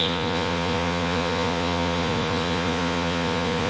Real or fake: fake